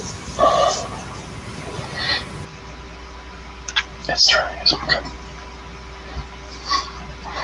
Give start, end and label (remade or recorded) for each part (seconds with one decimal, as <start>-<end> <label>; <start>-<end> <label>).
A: 0.0-4.0 recorded; 4.0-4.8 remade; 4.8-7.4 recorded